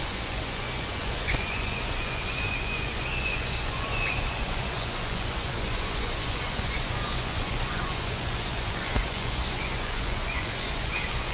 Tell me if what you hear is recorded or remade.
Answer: remade